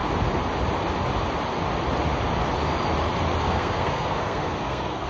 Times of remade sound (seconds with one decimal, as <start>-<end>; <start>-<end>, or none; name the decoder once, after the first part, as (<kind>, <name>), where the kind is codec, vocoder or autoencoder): 3.4-5.1 (codec, SNAC)